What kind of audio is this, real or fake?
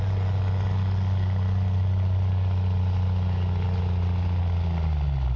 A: real